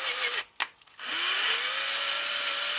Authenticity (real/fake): real